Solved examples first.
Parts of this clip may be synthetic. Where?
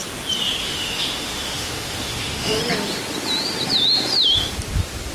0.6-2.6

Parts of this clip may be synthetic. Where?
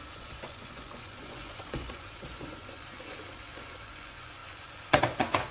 0.0-5.5